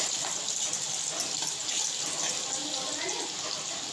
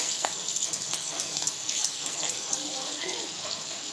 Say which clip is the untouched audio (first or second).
first